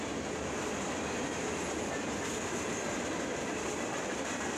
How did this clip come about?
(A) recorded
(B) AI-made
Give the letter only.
A